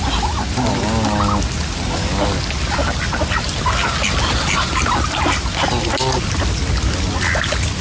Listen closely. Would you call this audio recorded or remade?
recorded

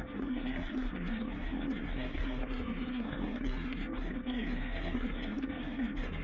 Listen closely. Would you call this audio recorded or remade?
remade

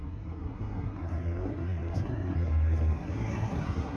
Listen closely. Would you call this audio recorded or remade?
remade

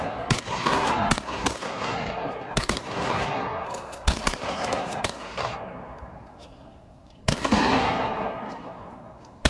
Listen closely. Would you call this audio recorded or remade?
remade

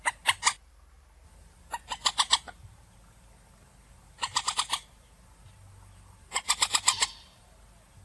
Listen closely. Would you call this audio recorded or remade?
recorded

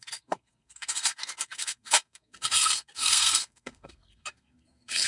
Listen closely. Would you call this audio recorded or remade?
remade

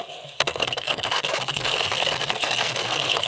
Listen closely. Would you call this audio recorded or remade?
remade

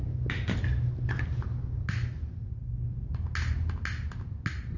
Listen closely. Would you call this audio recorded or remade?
recorded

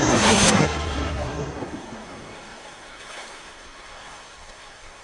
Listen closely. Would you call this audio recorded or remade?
remade